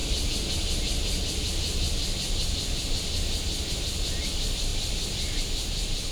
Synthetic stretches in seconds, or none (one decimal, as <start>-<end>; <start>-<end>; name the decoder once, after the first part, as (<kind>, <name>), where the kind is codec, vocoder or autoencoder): 3.7-4.7 (vocoder, BigVGAN v2)